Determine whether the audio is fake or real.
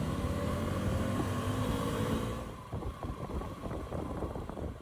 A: fake